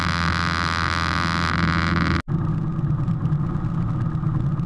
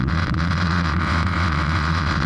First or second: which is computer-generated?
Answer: second